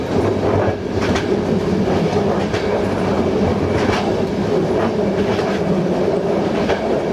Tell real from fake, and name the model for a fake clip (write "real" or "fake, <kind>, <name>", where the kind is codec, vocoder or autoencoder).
real